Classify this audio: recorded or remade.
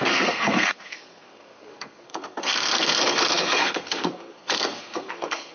remade